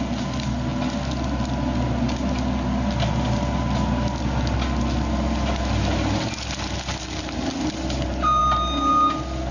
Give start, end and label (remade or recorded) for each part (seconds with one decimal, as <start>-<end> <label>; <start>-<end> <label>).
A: 0.0-9.5 recorded